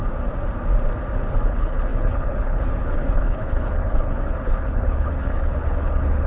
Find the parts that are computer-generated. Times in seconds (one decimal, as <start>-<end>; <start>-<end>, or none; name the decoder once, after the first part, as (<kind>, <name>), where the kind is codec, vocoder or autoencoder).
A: 1.3-6.3 (codec, HILCodec)